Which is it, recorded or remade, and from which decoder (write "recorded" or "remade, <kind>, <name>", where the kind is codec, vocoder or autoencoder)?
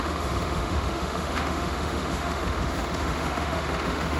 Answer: remade, autoencoder, DAC-VAE